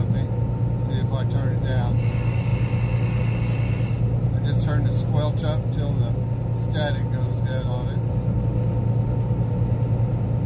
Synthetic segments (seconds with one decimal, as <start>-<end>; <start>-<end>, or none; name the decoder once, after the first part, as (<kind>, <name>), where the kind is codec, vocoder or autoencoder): none